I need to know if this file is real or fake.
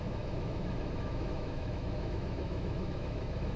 fake